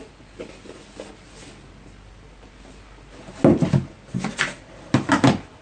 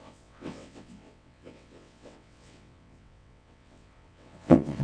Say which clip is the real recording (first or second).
first